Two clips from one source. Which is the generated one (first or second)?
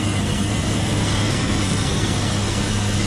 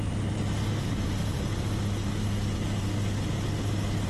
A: first